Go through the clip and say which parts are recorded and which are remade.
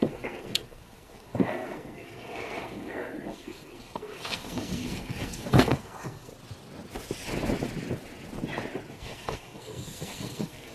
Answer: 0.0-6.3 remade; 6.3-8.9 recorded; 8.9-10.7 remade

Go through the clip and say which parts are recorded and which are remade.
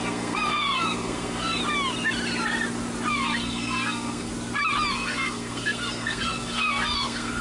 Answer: 0.0-1.6 remade; 1.6-3.1 recorded; 3.1-4.3 remade; 4.3-4.9 recorded; 4.9-7.4 remade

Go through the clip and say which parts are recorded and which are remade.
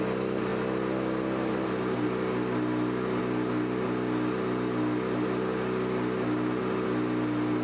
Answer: 0.0-7.6 recorded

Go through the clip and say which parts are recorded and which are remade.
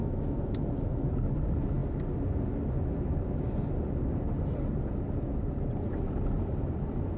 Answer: 0.0-7.2 recorded